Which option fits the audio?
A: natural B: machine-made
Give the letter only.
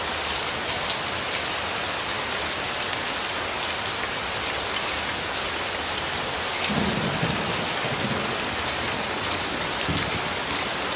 A